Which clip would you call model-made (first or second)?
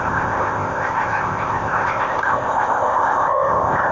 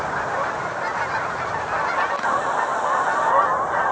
first